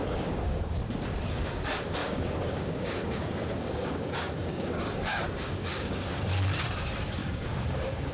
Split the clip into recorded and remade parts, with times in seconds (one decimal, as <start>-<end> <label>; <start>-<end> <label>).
0.0-0.7 remade; 0.7-2.0 recorded; 2.0-6.2 remade; 6.2-7.2 recorded; 7.2-8.1 remade